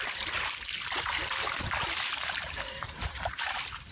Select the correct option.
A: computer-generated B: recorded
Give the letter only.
A